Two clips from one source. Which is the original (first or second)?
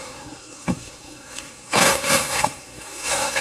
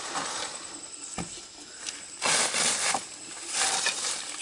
second